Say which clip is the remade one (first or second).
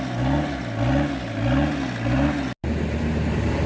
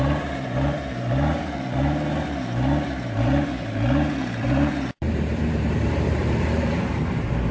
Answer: second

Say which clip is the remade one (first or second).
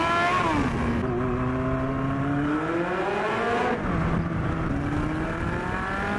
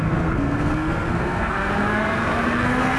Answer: second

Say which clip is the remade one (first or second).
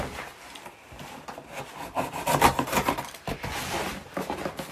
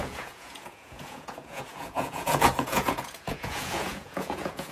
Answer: second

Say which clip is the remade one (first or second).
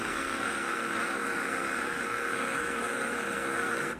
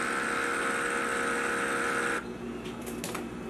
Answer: first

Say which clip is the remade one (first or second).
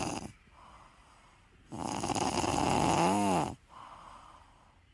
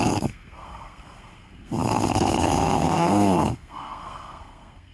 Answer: second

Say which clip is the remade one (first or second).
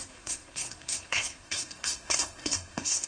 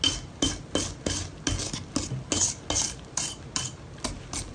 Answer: first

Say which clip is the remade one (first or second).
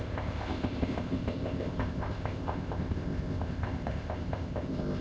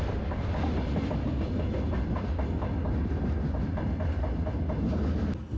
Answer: first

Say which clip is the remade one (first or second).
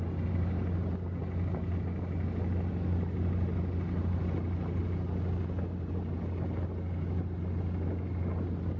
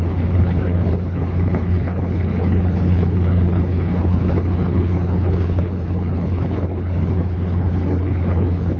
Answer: second